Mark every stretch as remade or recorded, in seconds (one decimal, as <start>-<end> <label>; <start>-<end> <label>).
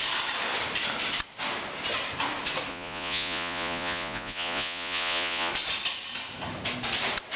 0.0-2.7 recorded; 2.7-5.5 remade; 5.5-7.4 recorded